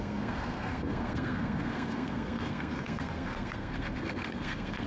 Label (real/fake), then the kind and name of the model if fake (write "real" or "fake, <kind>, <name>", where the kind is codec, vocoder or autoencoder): fake, codec, SNAC